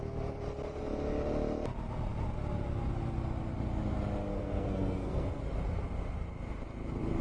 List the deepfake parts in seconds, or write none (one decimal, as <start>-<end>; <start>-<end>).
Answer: 4.3-5.4